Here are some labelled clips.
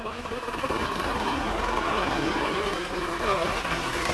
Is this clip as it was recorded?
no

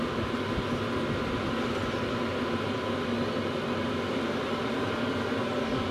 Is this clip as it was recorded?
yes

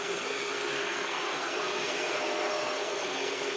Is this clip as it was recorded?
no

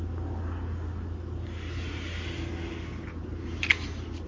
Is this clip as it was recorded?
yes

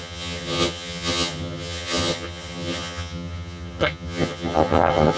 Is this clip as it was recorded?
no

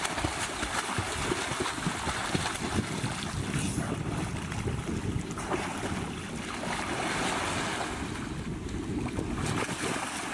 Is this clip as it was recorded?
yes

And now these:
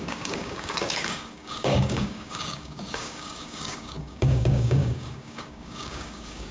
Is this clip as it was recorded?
no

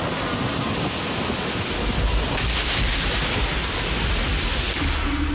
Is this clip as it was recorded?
yes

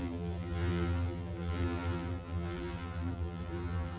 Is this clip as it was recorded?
no